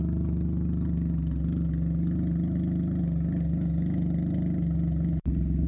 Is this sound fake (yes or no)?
no